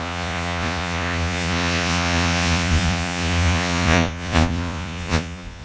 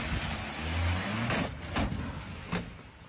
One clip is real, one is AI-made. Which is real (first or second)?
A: second